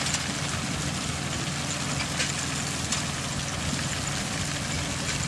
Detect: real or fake real